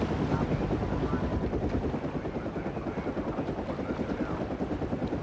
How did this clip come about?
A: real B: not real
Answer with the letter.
A